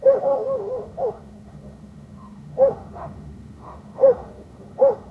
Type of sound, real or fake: fake